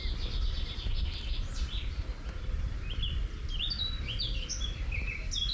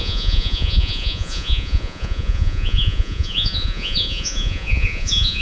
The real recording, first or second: first